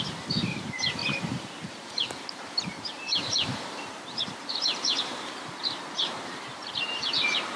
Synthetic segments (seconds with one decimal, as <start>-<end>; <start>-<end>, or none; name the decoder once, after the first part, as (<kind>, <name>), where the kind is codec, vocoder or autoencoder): 0.0-1.0 (vocoder, BigVGAN v2); 2.4-7.6